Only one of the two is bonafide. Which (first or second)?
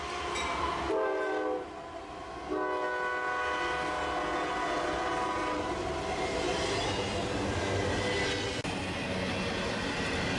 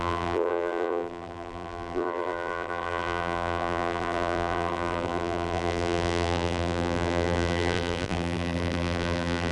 first